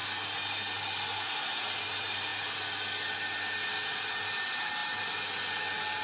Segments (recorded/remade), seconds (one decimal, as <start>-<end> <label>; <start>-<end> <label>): 0.0-6.0 recorded